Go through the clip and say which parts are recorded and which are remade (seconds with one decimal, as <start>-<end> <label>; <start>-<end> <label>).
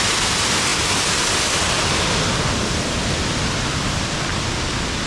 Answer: 0.0-5.1 recorded